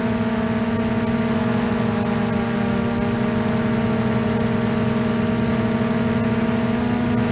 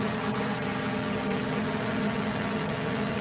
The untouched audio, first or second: first